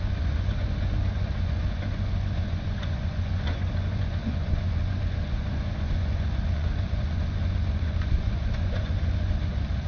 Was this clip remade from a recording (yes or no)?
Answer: yes